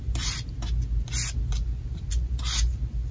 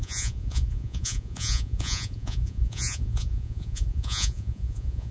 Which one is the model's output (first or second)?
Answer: second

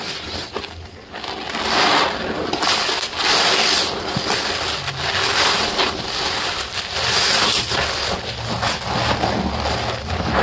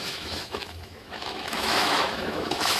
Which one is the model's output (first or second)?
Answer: second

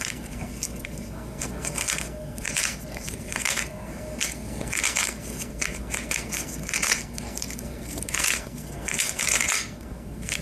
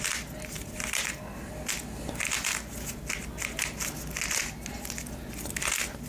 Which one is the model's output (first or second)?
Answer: first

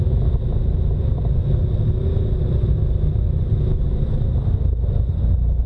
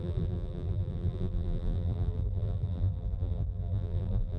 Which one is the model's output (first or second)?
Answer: second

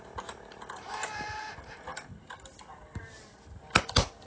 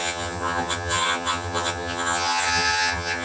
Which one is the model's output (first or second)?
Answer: second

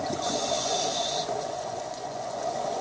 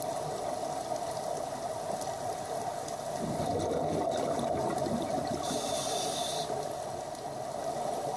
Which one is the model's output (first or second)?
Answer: first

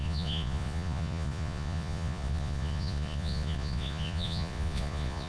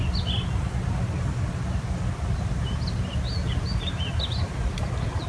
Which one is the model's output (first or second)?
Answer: first